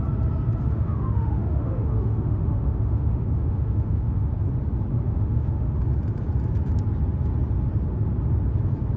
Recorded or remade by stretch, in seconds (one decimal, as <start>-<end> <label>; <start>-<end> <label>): 0.0-0.6 recorded; 0.6-4.3 remade; 4.3-4.9 recorded; 4.9-5.8 remade; 5.8-9.0 recorded